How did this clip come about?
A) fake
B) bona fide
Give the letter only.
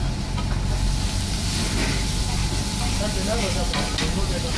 B